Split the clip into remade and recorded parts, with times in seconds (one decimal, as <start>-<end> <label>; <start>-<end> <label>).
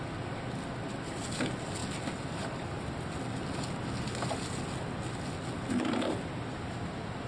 0.0-7.3 recorded